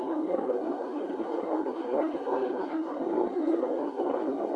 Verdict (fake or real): fake